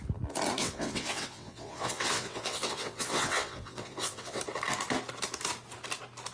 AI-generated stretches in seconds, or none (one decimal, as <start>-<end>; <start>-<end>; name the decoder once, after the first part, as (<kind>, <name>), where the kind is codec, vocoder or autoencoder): 0.6-4.4 (vocoder, WaveNeXt)